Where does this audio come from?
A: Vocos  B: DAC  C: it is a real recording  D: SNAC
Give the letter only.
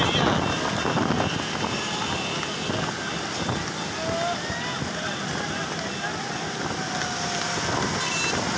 C